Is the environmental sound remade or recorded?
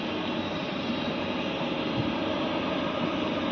recorded